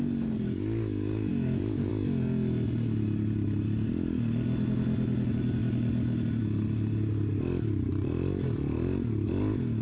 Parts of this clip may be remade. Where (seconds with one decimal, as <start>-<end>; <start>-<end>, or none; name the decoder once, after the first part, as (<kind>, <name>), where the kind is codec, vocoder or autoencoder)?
1.3-1.9 (codec, DAC)